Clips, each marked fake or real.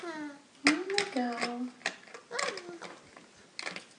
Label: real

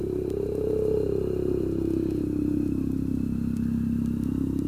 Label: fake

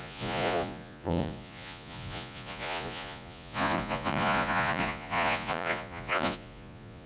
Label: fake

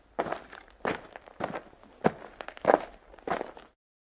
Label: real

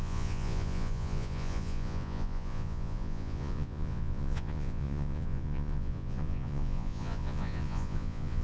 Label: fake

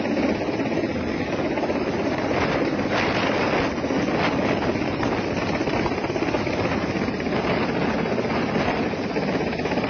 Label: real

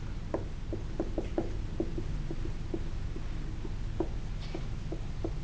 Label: real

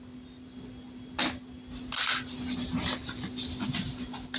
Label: real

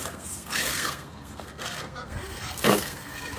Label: fake